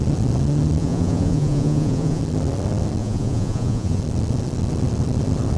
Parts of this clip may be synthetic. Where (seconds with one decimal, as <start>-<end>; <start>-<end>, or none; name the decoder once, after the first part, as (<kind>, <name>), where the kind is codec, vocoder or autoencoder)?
0.8-2.2 (vocoder, Vocos); 3.0-4.0